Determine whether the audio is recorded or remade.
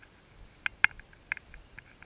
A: recorded